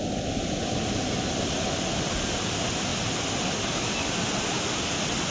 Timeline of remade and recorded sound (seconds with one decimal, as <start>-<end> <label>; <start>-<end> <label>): 0.0-5.3 recorded